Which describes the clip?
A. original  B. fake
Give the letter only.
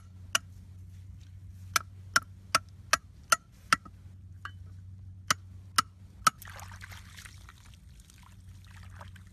A